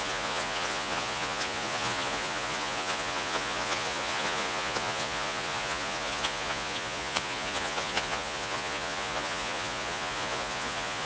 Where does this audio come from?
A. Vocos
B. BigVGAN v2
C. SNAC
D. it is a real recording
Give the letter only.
A